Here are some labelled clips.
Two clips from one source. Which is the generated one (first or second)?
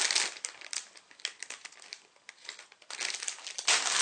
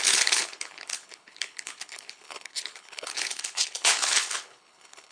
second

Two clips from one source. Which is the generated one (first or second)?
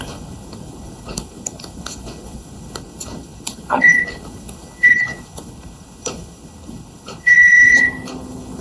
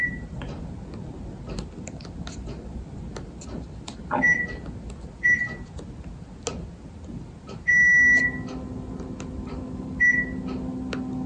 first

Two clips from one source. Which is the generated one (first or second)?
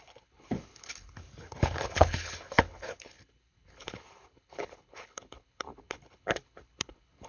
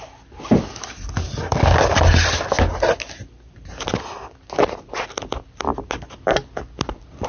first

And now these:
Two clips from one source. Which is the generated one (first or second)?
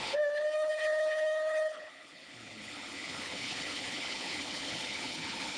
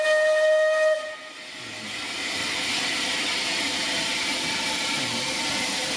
first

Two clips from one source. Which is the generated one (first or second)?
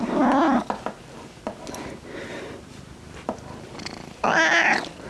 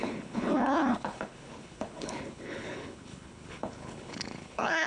second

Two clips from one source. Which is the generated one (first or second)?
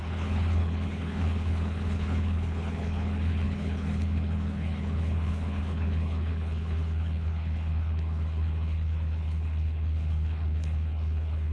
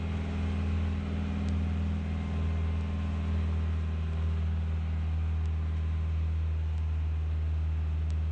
first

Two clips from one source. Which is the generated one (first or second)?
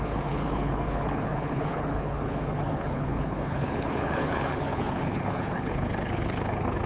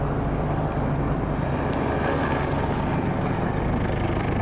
first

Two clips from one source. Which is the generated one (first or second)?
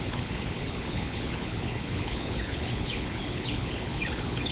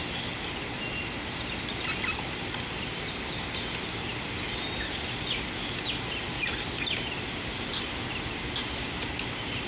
first